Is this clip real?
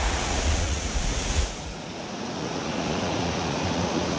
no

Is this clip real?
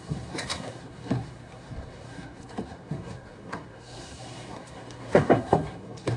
no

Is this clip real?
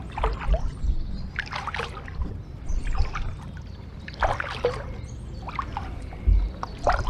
yes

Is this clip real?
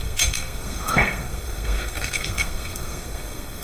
no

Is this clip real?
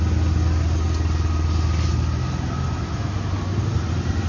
yes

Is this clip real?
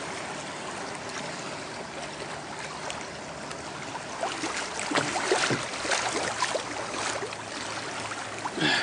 yes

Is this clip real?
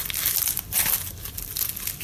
no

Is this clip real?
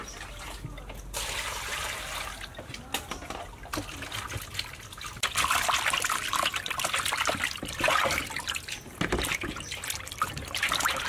yes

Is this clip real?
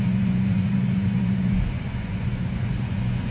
no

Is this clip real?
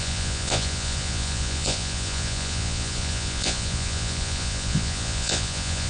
no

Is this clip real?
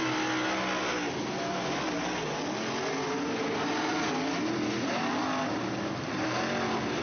yes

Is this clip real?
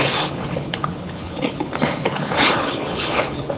no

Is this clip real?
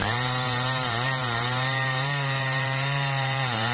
no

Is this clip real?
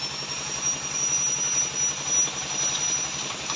no